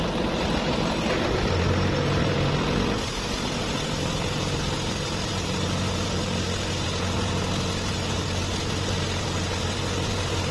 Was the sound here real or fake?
real